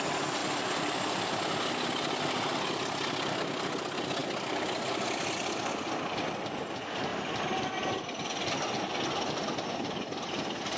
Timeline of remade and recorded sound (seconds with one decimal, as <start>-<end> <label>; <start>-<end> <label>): 0.0-10.8 recorded